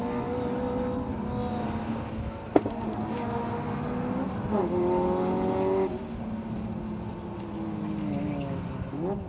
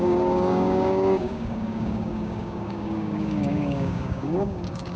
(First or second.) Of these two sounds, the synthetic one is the second